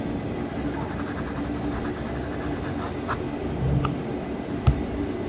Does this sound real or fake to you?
real